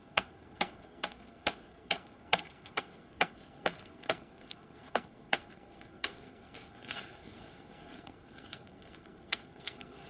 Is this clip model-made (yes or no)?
yes